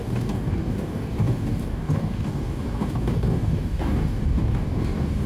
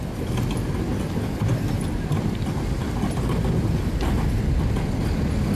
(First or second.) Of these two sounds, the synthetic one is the first